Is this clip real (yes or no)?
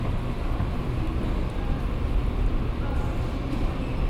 yes